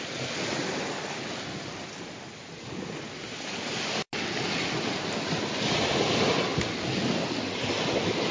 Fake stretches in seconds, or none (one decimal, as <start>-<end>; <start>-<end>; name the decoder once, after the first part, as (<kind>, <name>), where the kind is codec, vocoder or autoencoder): none